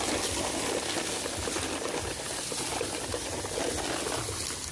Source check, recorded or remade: recorded